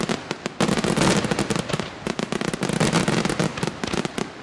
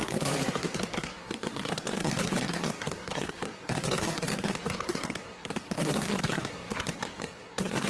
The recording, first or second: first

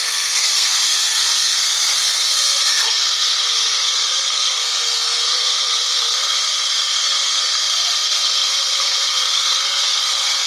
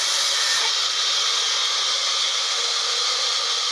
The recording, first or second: second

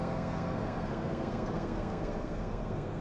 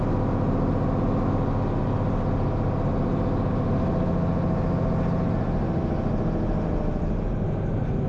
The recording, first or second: second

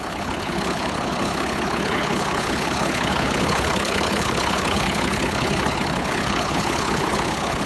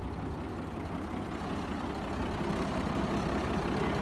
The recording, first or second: second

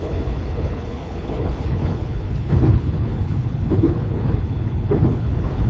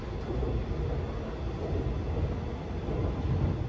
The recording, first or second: second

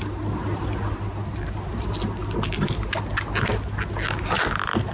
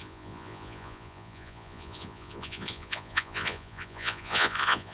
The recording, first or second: first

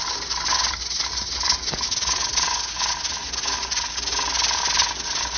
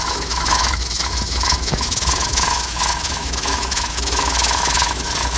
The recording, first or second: first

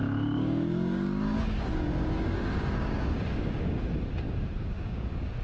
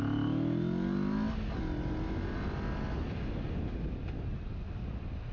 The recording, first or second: second